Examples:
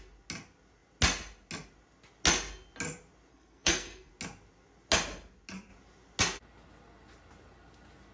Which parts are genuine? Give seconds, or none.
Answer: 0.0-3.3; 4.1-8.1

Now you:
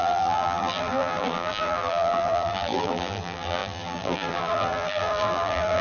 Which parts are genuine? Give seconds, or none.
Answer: none

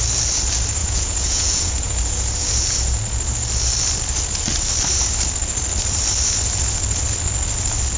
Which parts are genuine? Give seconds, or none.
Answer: 0.0-0.8; 3.0-8.0

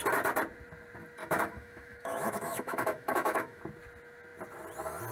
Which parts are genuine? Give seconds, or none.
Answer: 0.0-1.2; 3.6-5.1

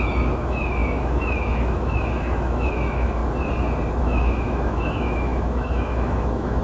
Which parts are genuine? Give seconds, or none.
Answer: 3.2-4.0

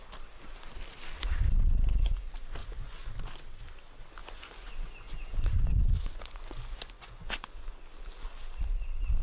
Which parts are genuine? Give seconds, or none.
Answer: 0.0-2.6; 3.1-4.2; 7.7-9.2

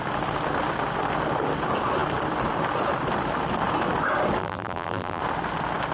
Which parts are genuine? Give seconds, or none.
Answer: 0.0-4.4; 5.2-5.9

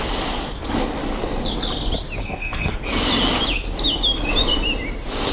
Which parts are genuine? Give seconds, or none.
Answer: 0.0-2.2; 2.8-5.3